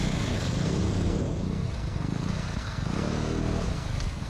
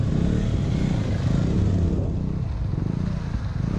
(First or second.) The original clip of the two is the second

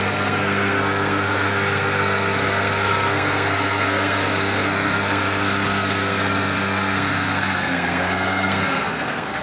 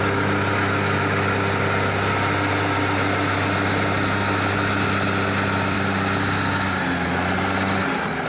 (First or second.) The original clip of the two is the second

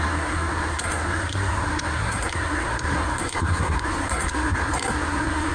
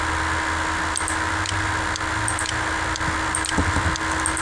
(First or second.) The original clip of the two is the second